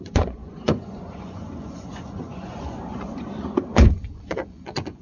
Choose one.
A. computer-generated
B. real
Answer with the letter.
A